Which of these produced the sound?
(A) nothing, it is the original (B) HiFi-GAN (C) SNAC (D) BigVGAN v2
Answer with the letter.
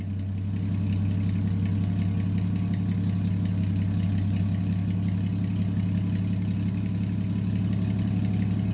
A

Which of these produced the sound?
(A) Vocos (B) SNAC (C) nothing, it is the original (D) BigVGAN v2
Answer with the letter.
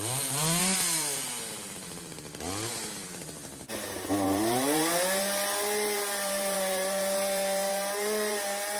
D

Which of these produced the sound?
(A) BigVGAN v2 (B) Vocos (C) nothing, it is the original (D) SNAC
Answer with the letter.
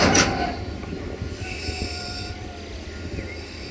C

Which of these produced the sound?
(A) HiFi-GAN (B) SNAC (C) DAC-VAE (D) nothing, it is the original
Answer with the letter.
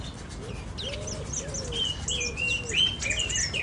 D